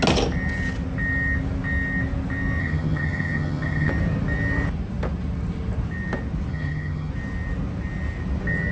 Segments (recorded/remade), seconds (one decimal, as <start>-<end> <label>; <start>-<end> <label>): 0.0-2.6 recorded; 2.6-3.9 remade; 3.9-6.5 recorded; 6.5-7.1 remade; 7.1-8.7 recorded